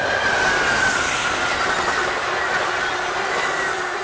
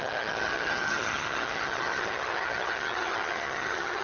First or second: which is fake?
second